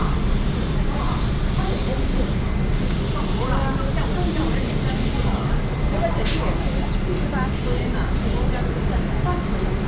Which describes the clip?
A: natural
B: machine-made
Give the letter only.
A